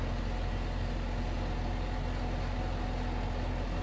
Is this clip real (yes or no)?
yes